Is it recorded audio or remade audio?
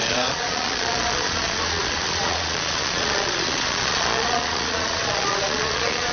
remade